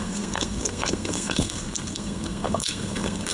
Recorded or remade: remade